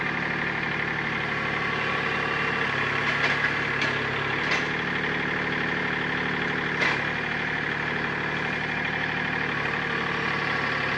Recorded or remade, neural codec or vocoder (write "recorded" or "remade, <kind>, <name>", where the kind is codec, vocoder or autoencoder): recorded